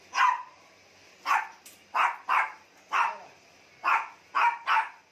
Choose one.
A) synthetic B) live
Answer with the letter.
B